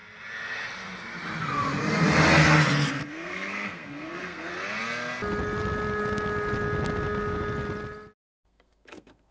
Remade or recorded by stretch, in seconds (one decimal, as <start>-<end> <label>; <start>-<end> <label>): 0.0-2.9 recorded; 2.9-4.5 remade; 4.5-8.2 recorded; 8.2-9.3 remade